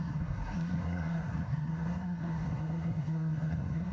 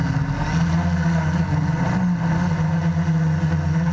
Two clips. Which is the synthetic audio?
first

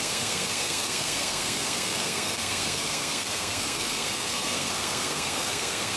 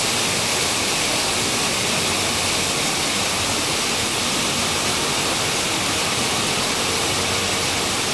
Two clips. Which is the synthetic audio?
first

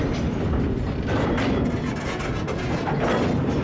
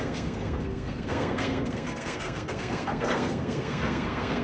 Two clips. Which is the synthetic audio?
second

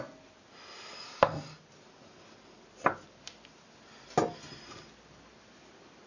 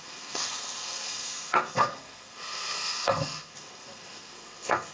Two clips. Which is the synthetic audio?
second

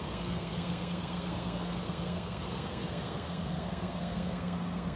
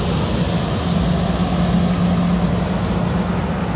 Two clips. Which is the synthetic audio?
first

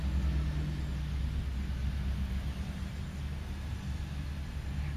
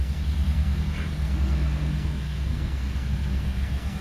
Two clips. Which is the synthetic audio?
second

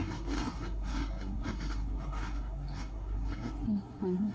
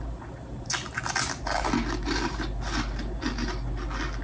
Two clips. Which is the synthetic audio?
first